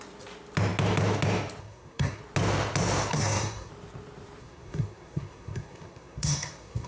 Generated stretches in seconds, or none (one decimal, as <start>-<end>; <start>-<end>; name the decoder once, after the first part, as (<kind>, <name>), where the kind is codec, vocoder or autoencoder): 1.6-2.2 (codec, SNAC); 3.1-3.7; 4.4-6.9